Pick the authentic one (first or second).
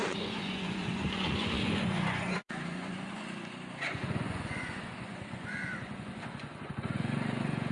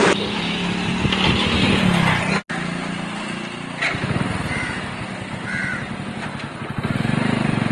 second